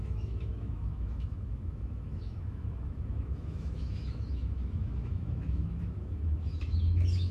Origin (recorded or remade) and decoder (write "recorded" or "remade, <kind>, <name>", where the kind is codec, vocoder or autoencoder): remade, autoencoder, DAC-VAE